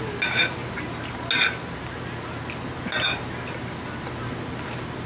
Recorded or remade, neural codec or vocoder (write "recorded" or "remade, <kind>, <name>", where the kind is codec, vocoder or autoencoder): recorded